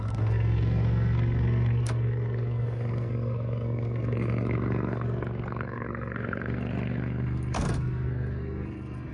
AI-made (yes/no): yes